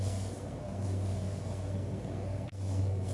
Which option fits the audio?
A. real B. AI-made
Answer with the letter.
B